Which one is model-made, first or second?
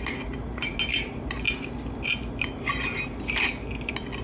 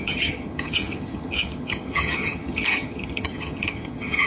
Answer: second